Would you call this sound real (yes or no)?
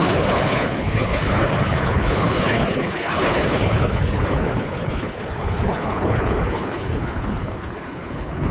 no